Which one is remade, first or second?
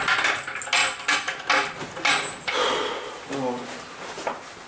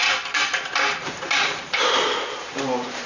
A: second